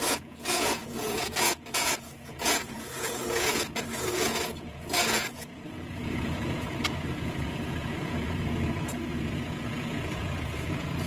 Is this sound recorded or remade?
remade